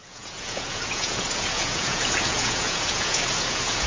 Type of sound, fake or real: fake